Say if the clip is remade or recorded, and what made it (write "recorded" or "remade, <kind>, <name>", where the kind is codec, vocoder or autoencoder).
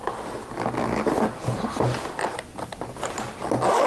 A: recorded